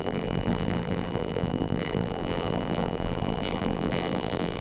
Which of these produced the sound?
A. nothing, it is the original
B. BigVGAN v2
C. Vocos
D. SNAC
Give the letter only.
B